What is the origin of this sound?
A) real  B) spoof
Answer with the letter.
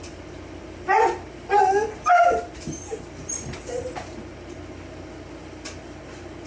A